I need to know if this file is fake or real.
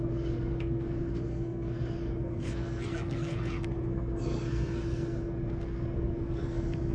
fake